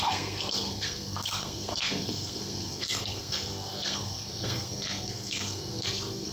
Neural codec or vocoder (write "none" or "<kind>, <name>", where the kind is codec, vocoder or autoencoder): codec, SNAC